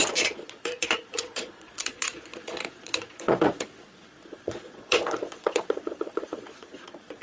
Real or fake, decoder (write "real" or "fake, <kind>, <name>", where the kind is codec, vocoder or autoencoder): fake, vocoder, Vocos